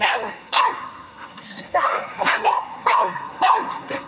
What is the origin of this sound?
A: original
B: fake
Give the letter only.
B